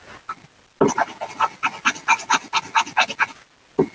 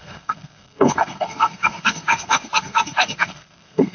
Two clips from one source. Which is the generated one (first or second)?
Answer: second